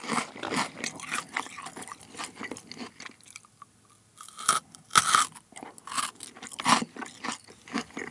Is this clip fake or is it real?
real